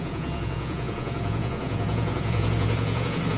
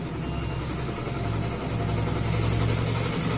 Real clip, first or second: second